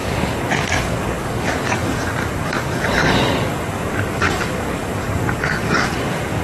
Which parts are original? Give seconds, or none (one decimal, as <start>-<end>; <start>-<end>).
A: none